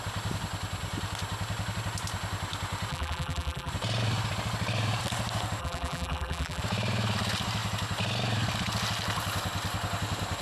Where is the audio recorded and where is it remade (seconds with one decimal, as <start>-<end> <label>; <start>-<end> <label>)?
0.0-2.9 recorded; 2.9-3.7 remade; 3.7-5.6 recorded; 5.6-6.6 remade; 6.6-10.4 recorded